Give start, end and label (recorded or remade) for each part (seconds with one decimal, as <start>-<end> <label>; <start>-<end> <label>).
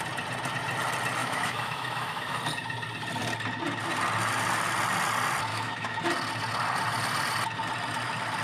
0.0-1.2 recorded; 1.2-2.4 remade; 2.4-5.5 recorded; 5.5-6.0 remade; 6.0-8.4 recorded